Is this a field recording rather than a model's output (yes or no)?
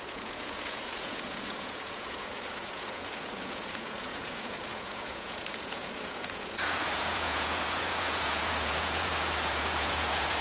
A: no